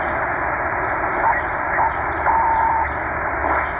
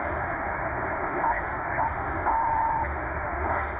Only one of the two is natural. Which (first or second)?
first